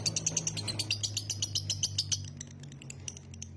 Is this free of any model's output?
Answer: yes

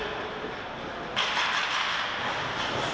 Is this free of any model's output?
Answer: yes